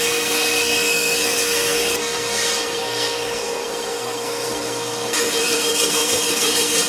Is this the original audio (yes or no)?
no